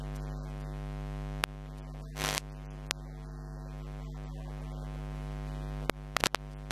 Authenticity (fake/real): real